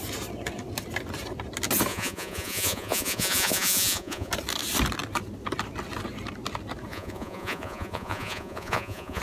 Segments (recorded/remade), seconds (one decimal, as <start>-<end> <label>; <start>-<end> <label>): 0.0-1.9 recorded; 1.9-4.3 remade; 4.3-6.9 recorded; 6.9-9.2 remade